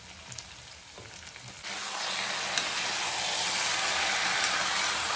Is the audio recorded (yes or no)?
yes